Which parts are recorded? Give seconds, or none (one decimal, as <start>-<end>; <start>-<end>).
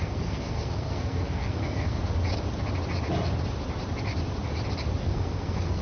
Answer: 2.0-5.0